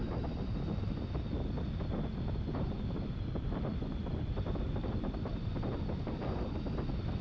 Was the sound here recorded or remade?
recorded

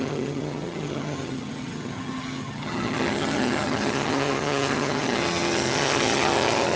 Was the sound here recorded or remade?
remade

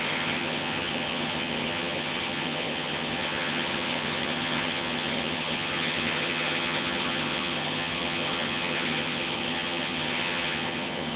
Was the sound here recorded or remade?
remade